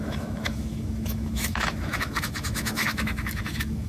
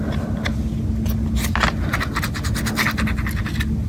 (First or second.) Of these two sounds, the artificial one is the first